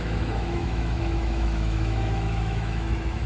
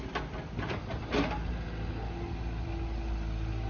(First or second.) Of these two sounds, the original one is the second